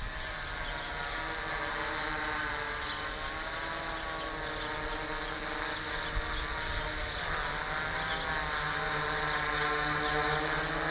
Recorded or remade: recorded